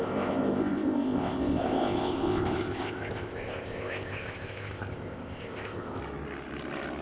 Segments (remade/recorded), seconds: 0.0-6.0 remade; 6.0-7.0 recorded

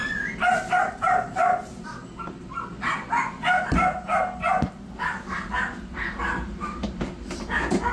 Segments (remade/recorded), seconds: 0.0-0.9 recorded; 0.9-2.0 remade; 2.0-4.8 recorded; 4.8-7.9 remade

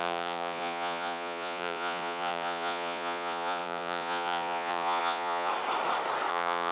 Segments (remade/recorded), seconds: 0.0-5.5 remade; 5.5-6.3 recorded; 6.3-6.7 remade